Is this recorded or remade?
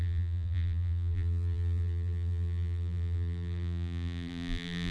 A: remade